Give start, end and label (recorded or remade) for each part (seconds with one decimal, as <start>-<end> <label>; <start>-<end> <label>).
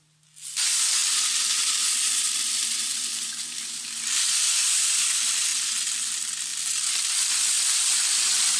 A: 0.0-1.0 recorded; 1.0-3.3 remade; 3.3-5.5 recorded; 5.5-6.1 remade; 6.1-6.5 recorded; 6.5-7.3 remade; 7.3-8.6 recorded